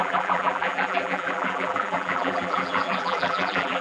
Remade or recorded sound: remade